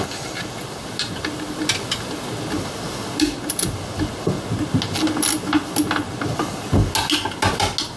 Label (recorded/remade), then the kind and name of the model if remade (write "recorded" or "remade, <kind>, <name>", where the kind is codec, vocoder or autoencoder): recorded